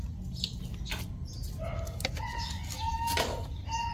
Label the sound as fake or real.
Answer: real